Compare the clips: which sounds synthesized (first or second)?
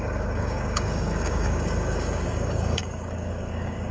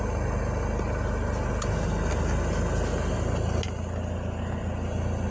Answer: first